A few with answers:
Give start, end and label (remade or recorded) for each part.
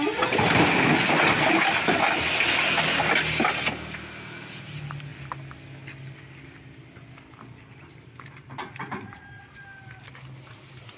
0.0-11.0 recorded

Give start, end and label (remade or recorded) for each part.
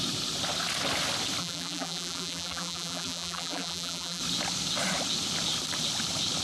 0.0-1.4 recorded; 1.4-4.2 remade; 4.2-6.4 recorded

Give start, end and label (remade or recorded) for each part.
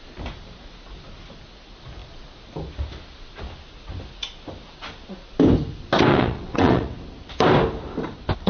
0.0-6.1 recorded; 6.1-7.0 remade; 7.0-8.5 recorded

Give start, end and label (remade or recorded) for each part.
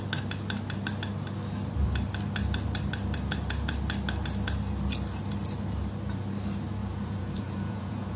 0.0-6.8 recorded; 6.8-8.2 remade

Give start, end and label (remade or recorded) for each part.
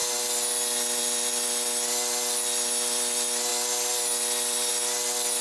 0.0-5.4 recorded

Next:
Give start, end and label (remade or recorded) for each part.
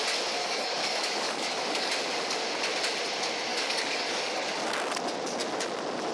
0.0-0.4 recorded; 0.4-1.9 remade; 1.9-3.5 recorded; 3.5-4.6 remade; 4.6-6.1 recorded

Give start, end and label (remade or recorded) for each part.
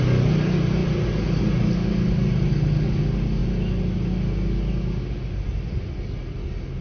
0.0-6.8 recorded